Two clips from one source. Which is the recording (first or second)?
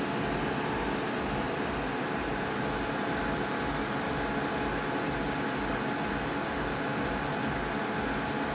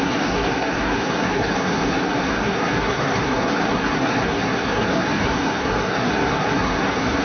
first